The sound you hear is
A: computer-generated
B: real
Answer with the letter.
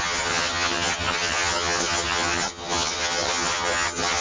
A